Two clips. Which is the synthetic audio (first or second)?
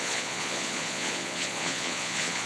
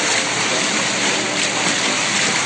first